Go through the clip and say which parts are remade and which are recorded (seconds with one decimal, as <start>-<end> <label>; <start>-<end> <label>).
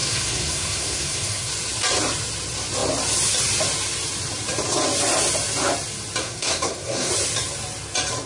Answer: 0.0-1.5 remade; 1.5-6.2 recorded; 6.2-7.1 remade; 7.1-8.3 recorded